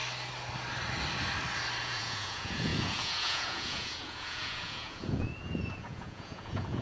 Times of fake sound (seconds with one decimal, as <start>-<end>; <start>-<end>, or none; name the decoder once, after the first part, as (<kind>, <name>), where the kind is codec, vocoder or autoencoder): 1.8-6.8 (vocoder, Vocos)